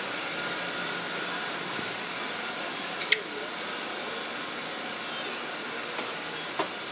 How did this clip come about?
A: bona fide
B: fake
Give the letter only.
A